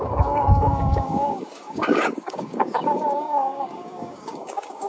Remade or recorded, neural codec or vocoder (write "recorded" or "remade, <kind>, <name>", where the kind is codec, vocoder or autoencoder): remade, codec, DAC